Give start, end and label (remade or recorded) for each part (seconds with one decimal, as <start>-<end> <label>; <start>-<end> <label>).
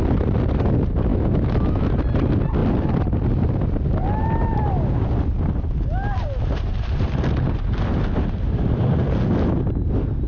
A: 0.0-1.1 recorded; 1.1-1.9 remade; 1.9-10.3 recorded